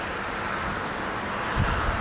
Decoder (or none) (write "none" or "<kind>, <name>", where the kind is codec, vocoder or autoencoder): none